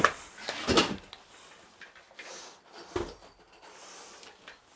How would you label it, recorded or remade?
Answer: recorded